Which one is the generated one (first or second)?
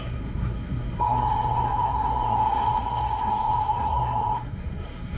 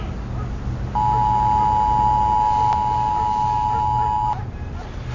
first